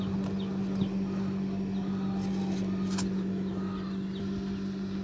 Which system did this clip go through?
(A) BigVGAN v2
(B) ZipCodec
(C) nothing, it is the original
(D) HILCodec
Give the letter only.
C